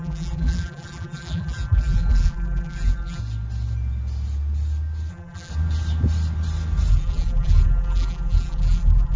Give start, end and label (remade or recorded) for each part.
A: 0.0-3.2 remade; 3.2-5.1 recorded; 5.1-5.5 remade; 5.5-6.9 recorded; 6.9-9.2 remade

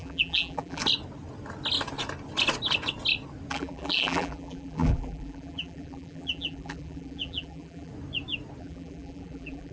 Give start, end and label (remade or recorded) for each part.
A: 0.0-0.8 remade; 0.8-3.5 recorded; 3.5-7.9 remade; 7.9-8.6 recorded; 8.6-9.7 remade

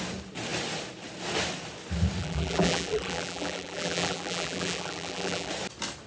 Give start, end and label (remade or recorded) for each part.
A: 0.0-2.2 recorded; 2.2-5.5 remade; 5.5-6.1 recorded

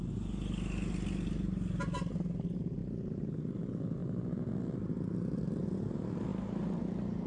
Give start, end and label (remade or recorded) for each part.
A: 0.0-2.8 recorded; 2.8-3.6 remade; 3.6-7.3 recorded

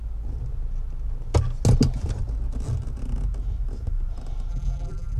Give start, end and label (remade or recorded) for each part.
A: 0.0-4.5 recorded; 4.5-5.2 remade

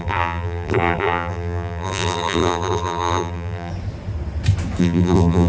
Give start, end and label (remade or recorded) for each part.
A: 0.0-3.7 remade; 3.7-4.8 recorded; 4.8-5.5 remade

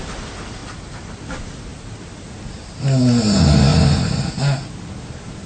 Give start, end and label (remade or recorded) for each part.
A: 0.0-0.6 recorded; 0.6-1.2 remade; 1.2-3.7 recorded; 3.7-4.3 remade; 4.3-5.5 recorded